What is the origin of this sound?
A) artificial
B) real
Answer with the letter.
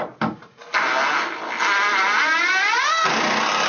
B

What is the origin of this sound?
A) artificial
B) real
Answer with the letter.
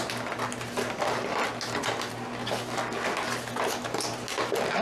B